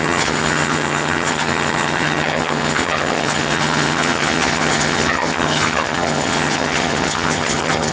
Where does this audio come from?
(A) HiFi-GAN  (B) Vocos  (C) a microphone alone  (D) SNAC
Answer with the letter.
A